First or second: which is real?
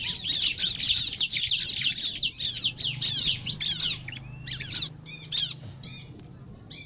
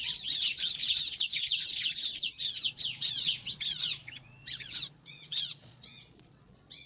first